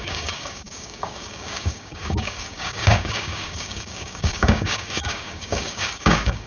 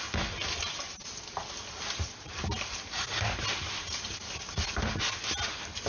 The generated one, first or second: first